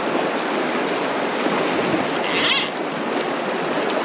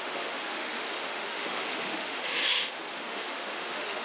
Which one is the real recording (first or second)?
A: first